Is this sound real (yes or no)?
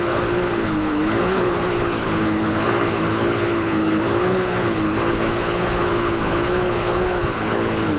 no